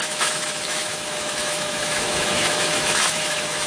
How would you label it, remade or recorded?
remade